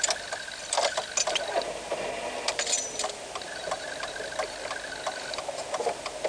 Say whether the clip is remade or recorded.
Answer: recorded